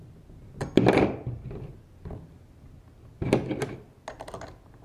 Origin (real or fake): real